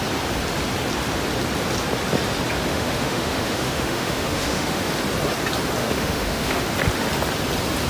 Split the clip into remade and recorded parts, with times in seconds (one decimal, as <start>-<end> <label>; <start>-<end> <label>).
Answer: 0.0-2.7 recorded; 2.7-4.9 remade; 4.9-5.8 recorded; 5.8-6.6 remade; 6.6-7.9 recorded